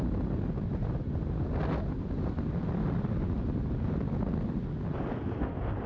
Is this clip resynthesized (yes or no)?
no